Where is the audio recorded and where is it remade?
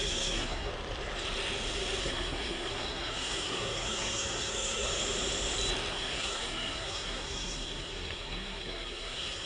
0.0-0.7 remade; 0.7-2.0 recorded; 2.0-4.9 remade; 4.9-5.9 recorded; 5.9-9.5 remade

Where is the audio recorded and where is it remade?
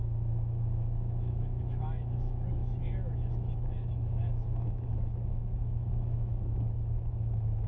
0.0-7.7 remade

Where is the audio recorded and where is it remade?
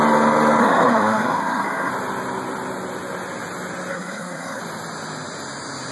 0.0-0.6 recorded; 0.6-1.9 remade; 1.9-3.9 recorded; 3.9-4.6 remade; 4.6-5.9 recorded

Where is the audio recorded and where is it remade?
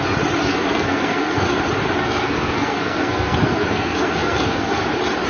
0.0-0.5 recorded; 0.5-1.6 remade; 1.6-2.0 recorded; 2.0-4.8 remade; 4.8-5.3 recorded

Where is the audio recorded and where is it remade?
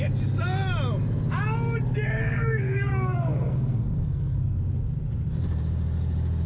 0.0-2.2 recorded; 2.2-4.6 remade; 4.6-6.5 recorded